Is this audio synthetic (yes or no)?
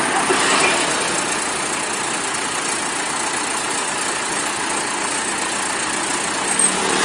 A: no